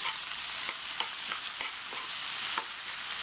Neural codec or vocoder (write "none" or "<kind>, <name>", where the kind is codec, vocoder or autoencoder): none